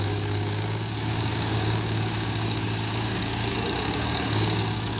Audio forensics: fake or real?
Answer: fake